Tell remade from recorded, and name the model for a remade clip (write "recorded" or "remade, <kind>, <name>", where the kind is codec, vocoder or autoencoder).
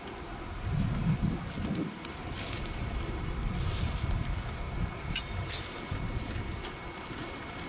recorded